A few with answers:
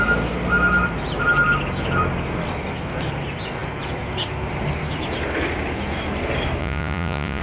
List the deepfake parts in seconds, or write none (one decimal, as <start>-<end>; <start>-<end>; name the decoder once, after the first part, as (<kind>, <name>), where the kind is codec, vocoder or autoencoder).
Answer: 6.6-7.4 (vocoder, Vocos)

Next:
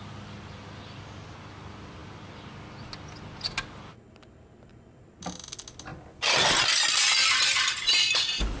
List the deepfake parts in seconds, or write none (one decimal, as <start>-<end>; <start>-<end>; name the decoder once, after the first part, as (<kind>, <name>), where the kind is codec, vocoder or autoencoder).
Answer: none

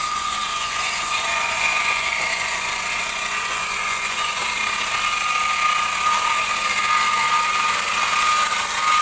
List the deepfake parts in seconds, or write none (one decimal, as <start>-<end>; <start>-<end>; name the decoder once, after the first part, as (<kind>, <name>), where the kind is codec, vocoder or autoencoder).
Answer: 0.0-4.4 (vocoder, Vocos)

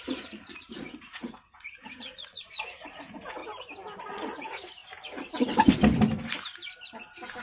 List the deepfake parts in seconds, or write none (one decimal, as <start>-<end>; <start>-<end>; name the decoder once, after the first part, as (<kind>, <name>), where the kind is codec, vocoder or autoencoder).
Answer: 0.0-3.4 (vocoder, Vocos); 4.0-4.8

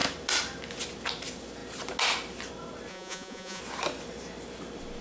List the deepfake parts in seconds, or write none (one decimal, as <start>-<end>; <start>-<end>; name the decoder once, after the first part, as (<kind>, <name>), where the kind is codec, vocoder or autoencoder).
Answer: 2.9-3.6 (vocoder, Vocos)